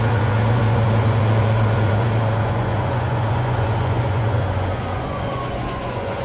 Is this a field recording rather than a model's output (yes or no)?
no